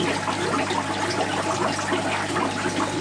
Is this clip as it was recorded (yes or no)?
yes